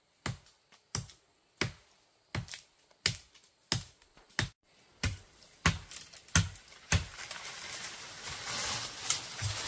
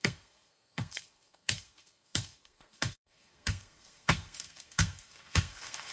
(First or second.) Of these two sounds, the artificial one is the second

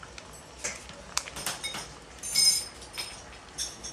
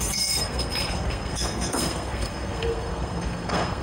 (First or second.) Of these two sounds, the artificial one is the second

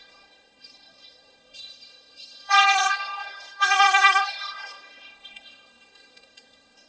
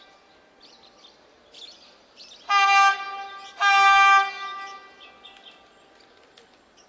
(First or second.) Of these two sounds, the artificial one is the first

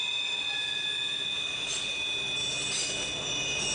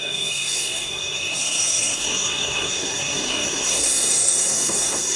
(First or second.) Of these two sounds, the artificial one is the second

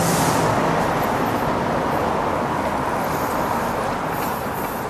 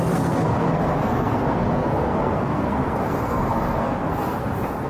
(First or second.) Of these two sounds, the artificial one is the second